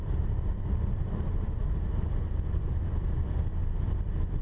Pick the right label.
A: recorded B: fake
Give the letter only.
B